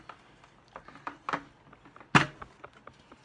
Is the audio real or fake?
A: real